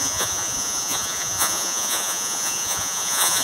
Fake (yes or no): yes